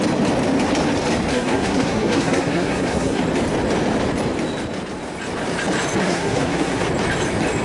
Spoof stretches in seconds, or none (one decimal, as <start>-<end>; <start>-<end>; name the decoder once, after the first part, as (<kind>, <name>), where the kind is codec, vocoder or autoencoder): 1.3-3.2 (codec, SNAC); 6.0-6.9